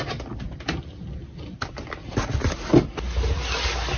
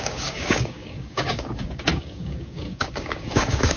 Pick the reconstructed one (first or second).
second